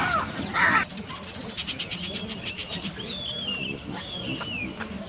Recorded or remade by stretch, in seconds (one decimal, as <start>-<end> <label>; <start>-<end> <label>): 0.0-5.1 recorded